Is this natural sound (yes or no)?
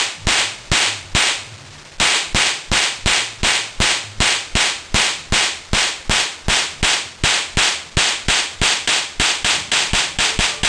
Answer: yes